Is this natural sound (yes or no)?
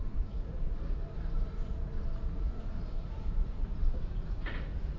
no